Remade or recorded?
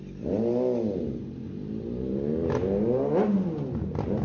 recorded